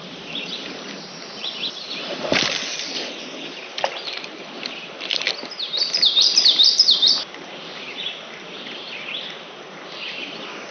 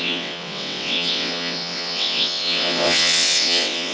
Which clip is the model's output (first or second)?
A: second